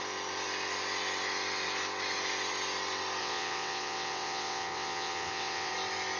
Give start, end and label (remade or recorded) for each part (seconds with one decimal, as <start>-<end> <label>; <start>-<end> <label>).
0.0-3.2 recorded; 3.2-5.7 remade; 5.7-6.2 recorded